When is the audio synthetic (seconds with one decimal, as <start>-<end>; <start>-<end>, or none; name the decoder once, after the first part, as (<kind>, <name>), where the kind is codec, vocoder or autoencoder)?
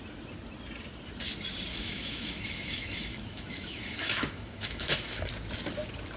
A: 1.7-5.3 (autoencoder, DAC-VAE)